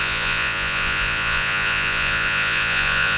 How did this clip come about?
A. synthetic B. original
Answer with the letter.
A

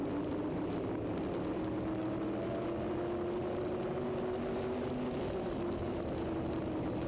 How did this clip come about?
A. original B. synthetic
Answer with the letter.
A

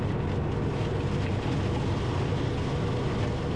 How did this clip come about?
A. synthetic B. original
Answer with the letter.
B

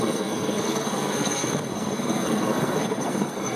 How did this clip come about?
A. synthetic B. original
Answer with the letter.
A